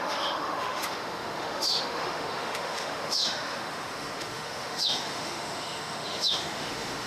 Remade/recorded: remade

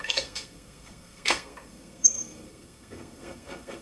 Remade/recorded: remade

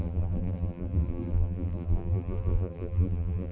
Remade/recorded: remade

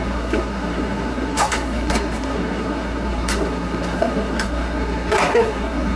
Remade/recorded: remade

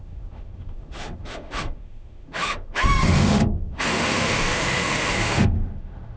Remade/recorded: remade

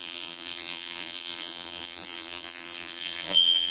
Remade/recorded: remade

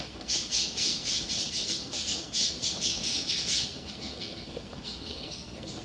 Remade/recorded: remade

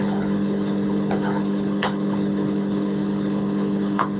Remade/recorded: remade